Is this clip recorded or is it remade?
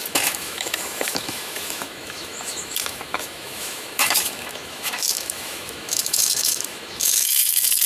remade